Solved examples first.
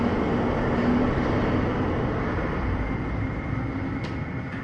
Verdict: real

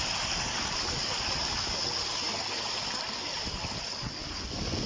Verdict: real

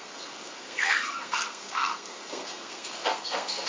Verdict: fake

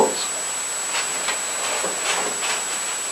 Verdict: real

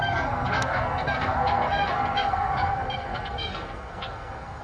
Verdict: fake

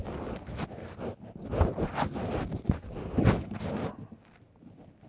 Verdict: real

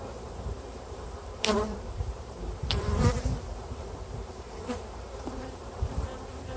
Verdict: fake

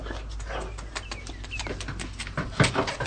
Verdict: real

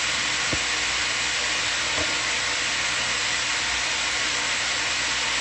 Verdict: real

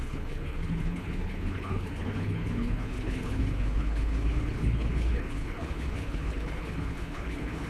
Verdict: fake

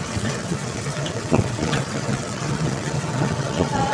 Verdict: fake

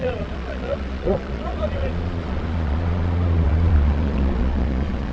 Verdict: fake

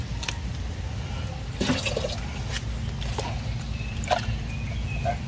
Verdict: real